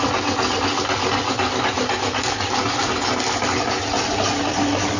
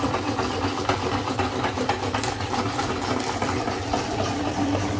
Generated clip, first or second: second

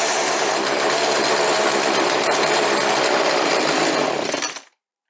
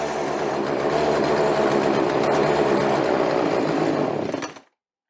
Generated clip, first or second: first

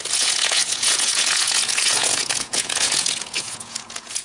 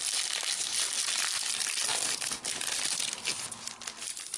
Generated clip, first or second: first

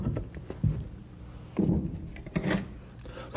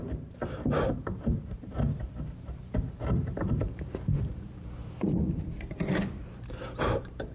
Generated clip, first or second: second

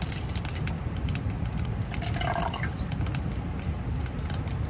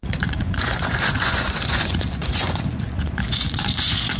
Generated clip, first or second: second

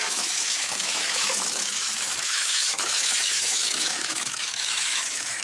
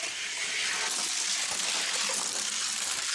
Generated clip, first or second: first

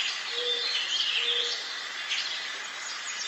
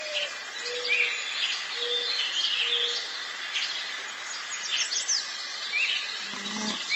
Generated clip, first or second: first